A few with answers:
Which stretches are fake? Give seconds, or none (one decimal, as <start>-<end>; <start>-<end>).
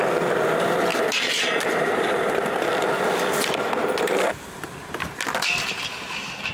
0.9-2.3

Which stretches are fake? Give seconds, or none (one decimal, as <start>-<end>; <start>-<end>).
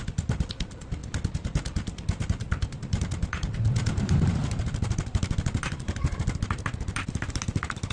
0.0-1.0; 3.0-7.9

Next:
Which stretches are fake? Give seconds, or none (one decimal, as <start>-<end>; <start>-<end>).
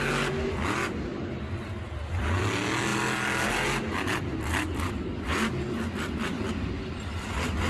2.9-3.5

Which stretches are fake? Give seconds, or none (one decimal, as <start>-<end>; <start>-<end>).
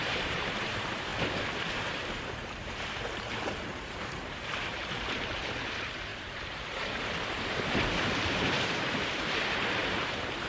0.0-1.1; 1.9-10.5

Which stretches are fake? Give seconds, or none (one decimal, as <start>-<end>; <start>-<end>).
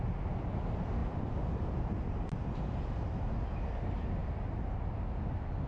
1.0-2.0